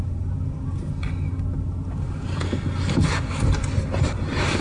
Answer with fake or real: real